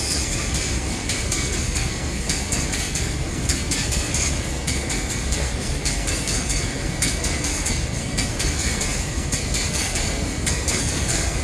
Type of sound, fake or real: fake